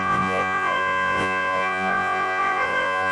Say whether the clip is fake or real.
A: fake